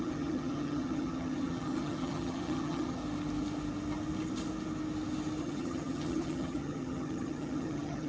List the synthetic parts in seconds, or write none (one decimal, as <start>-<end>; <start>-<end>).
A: 0.0-3.0; 5.4-8.1